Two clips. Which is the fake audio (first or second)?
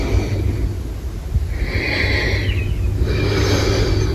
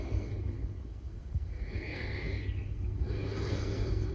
second